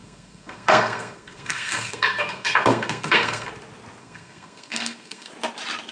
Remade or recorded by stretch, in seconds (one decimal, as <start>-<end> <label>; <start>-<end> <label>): 0.0-3.5 remade; 3.5-4.0 recorded; 4.0-5.3 remade; 5.3-5.9 recorded